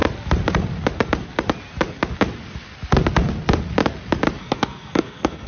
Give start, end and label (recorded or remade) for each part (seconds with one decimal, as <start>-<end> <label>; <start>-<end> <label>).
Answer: 0.0-4.4 recorded; 4.4-5.5 remade